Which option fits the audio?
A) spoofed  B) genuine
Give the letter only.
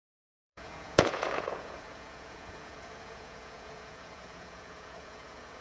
A